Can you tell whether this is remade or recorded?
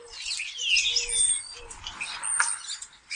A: recorded